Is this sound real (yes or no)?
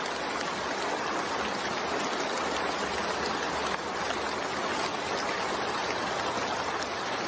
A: yes